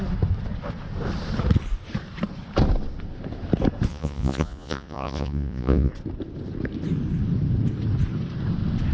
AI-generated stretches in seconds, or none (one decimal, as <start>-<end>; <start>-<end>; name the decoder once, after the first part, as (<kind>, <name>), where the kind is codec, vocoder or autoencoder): 3.9-5.9 (vocoder, Vocos)